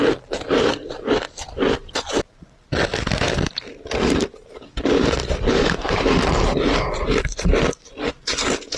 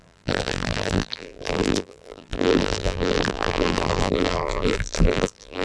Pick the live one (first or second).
first